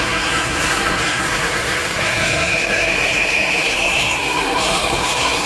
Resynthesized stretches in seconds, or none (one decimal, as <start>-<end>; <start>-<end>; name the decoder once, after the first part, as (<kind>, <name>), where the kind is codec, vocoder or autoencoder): 0.0-5.5 (codec, SNAC)